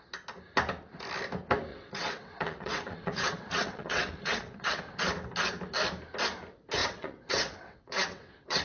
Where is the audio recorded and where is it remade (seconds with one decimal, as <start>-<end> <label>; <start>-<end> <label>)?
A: 0.0-1.7 recorded; 1.7-4.7 remade; 4.7-6.8 recorded; 6.8-8.6 remade